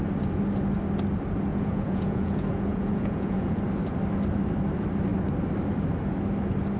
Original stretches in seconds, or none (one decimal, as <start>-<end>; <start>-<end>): 0.0-1.5; 3.6-6.8